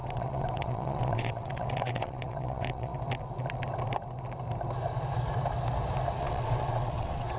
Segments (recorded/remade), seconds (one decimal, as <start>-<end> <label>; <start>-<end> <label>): 0.0-2.9 remade; 2.9-6.2 recorded; 6.2-7.4 remade